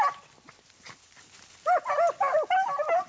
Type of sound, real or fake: real